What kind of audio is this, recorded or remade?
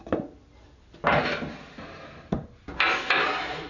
recorded